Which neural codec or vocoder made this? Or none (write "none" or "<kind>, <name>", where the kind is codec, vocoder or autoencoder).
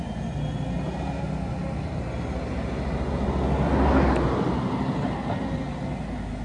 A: none